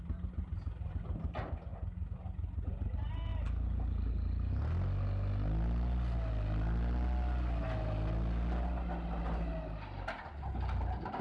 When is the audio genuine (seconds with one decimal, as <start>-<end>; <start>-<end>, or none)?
0.0-11.2